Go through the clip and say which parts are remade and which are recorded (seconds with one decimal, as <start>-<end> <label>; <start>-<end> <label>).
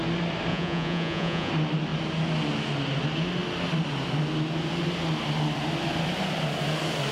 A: 0.0-0.5 recorded; 0.5-1.5 remade; 1.5-7.1 recorded